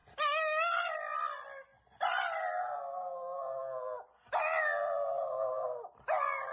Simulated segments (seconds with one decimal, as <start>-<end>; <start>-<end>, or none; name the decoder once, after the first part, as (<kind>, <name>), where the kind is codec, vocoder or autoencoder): none